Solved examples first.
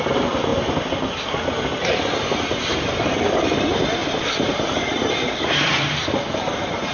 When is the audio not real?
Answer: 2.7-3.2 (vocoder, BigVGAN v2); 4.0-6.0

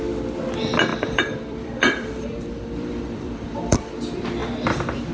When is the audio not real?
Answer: 0.9-3.9 (vocoder, BigVGAN v2)

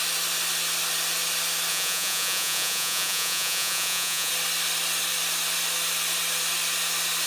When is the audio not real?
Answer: 1.7-4.3 (vocoder, Vocos)